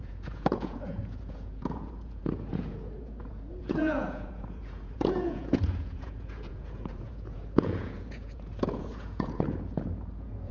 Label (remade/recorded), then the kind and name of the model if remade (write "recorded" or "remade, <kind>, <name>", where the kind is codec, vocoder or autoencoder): remade, vocoder, Vocos